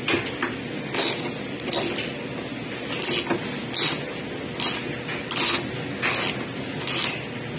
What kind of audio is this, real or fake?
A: real